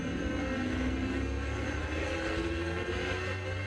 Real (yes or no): no